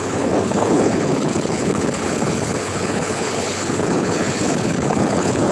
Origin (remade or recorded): remade